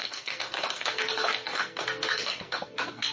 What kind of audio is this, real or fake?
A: fake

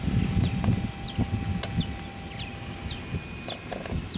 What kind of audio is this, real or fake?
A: real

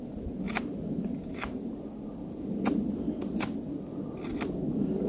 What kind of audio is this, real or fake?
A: real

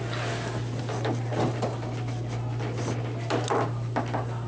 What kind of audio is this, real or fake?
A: real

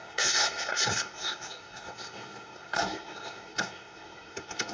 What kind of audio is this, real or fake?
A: fake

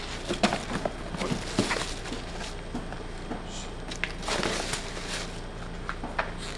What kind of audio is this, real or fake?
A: real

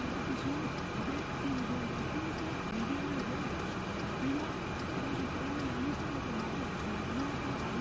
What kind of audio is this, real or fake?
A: real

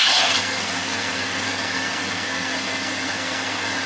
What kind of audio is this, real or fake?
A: fake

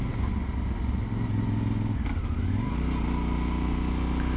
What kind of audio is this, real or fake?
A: real